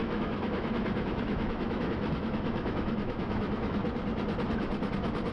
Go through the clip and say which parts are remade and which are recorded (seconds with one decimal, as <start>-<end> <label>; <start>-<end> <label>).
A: 0.0-3.8 remade; 3.8-5.3 recorded